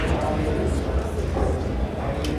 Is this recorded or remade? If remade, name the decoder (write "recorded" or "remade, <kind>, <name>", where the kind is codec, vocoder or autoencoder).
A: recorded